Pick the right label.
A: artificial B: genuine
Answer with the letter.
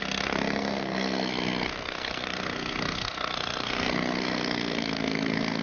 A